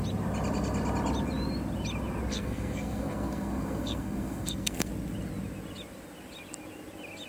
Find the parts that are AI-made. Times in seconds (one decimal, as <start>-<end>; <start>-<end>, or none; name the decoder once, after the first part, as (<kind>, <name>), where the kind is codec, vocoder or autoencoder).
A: 2.3-4.9 (codec, SNAC)